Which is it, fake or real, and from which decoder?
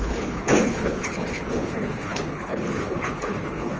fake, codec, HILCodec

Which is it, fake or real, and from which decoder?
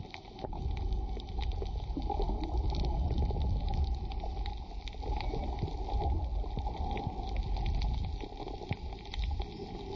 real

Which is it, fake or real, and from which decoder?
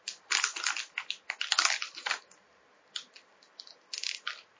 real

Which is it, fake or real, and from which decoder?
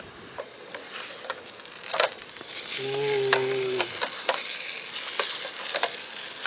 real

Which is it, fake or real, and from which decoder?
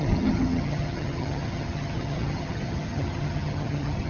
fake, vocoder, HiFi-GAN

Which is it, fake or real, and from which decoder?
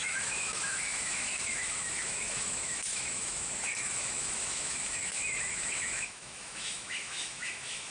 fake, autoencoder, DAC-VAE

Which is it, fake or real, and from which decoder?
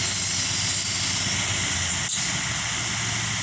real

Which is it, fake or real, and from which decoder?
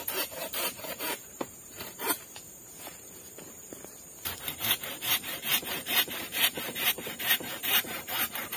fake, vocoder, BigVGAN v2